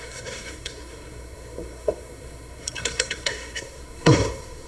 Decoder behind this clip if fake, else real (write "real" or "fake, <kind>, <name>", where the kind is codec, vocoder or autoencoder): fake, codec, SNAC